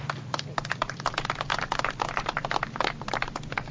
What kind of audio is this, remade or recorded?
recorded